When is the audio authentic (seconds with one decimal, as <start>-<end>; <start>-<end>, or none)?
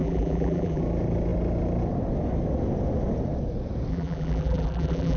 0.8-3.9